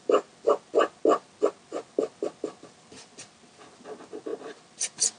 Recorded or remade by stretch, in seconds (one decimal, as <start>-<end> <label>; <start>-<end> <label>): 0.0-5.2 recorded